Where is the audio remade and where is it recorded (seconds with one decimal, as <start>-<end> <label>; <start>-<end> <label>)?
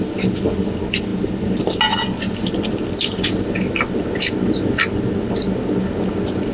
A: 0.0-6.5 recorded